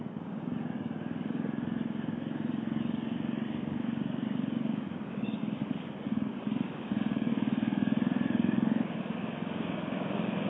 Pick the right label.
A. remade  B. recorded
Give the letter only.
A